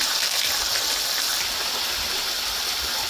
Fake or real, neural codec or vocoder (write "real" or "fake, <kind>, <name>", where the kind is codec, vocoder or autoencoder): real